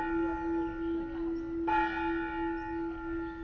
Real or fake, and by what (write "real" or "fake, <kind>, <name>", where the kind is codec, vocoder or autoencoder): real